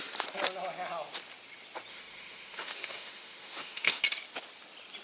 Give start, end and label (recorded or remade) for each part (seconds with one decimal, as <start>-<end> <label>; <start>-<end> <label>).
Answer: 0.0-1.9 recorded; 1.9-4.0 remade; 4.0-5.0 recorded